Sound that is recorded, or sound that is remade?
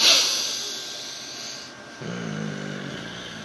recorded